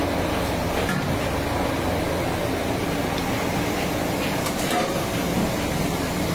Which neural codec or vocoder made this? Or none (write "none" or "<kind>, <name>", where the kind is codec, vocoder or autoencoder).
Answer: none